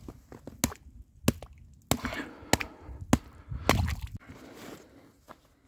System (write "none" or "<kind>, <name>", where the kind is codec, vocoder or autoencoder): none